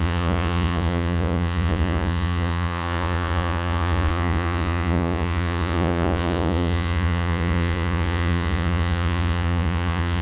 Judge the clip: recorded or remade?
remade